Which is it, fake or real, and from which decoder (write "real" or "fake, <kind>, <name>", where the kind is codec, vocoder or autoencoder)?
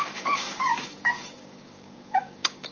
fake, codec, DAC